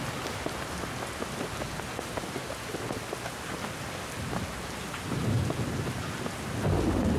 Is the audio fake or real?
real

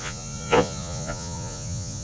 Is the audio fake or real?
fake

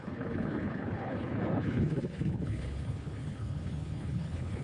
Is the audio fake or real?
fake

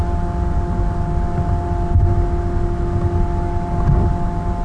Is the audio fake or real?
real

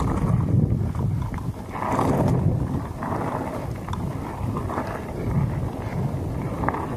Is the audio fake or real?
real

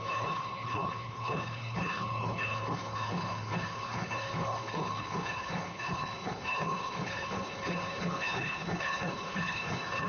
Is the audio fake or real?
fake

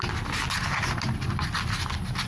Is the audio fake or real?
real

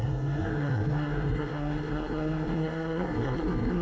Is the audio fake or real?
fake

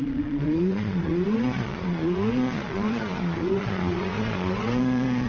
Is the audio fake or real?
fake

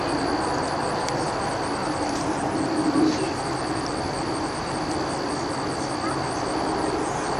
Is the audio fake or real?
real